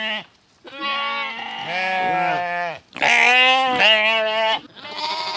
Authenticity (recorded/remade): recorded